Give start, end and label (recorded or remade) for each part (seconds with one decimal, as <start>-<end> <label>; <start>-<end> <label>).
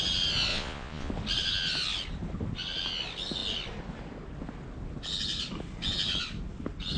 0.0-0.5 recorded; 0.5-1.1 remade; 1.1-7.0 recorded